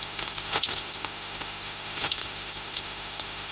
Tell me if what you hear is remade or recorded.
remade